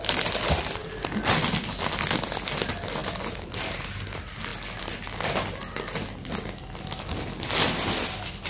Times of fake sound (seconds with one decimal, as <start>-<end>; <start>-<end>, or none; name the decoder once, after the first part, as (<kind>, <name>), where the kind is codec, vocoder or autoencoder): none